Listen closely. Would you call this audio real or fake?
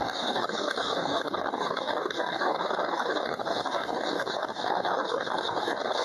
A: fake